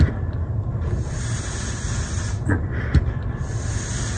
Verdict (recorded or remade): recorded